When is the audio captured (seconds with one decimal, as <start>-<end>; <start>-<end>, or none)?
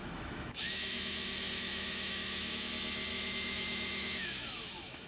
2.7-3.1